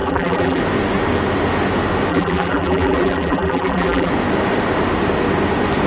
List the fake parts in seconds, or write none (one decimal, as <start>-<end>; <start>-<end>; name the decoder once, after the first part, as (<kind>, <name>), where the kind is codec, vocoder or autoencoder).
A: 0.0-0.6 (vocoder, BigVGAN v2); 2.1-4.1